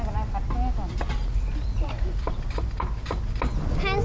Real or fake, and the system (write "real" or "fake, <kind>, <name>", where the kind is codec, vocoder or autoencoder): real